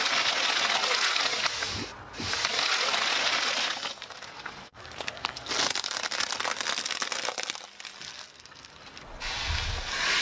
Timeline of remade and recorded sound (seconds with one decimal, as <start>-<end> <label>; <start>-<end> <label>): 0.0-4.6 recorded; 4.6-5.5 remade; 5.5-8.1 recorded; 8.1-8.7 remade; 8.7-10.2 recorded